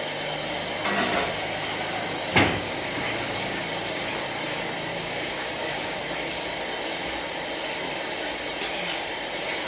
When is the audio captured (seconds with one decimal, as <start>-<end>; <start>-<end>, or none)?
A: 0.0-2.3; 3.6-4.9; 6.0-9.7

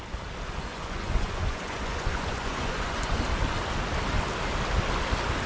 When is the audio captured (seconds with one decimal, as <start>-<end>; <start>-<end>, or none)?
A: 0.0-0.7; 3.2-5.5